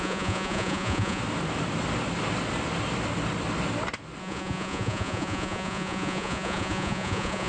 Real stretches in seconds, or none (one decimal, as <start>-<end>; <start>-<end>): 1.2-4.2

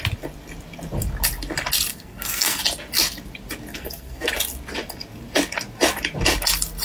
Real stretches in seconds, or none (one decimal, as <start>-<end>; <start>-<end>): 0.0-1.9; 2.6-3.7; 4.3-6.8

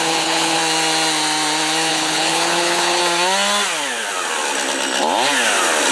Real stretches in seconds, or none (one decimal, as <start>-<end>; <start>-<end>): 0.6-1.9; 3.0-5.9

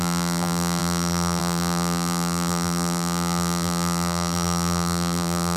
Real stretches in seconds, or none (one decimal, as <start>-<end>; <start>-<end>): none

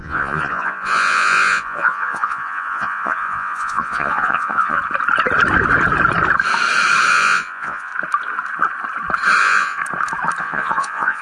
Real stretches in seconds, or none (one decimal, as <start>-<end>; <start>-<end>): 4.8-7.1; 7.9-9.4; 9.8-10.4

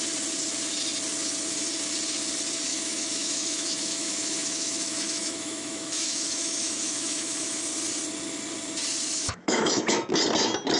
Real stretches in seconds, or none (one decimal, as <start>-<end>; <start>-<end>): 0.0-2.7; 7.6-9.2; 10.1-10.8

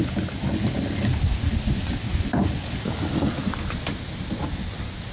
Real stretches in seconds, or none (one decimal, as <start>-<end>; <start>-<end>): 0.0-5.1

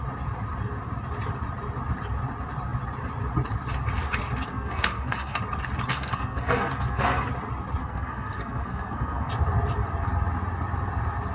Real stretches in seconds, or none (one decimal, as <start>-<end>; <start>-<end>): 0.0-4.5; 5.4-5.9; 7.3-7.8; 9.3-11.3